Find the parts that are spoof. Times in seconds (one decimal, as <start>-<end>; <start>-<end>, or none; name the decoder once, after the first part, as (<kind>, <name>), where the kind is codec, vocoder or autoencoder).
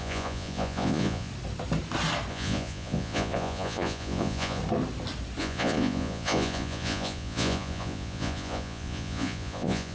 0.0-1.3 (vocoder, Vocos); 2.3-4.6; 5.4-9.9